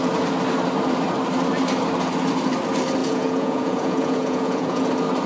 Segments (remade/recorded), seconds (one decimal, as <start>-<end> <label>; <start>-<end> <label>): 0.0-3.0 recorded; 3.0-4.8 remade; 4.8-5.3 recorded